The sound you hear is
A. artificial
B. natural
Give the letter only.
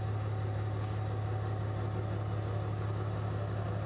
B